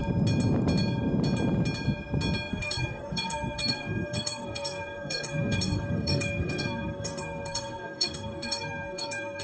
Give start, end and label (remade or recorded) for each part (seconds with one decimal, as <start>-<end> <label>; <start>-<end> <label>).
0.0-2.5 recorded; 2.5-9.4 remade